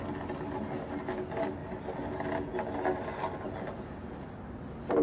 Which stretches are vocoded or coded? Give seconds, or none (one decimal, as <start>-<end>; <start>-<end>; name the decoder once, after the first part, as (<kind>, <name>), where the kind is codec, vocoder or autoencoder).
none